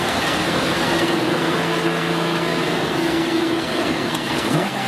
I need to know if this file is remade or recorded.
remade